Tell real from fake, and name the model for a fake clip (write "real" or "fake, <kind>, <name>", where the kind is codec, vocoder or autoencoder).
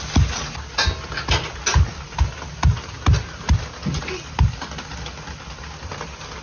real